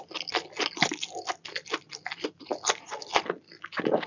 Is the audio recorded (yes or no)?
yes